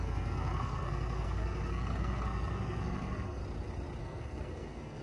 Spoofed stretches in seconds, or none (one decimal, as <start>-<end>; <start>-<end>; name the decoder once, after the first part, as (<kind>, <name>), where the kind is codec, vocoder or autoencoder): 0.0-3.4 (codec, SNAC); 4.0-5.0